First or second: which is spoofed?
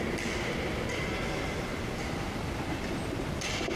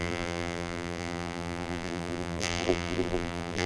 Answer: second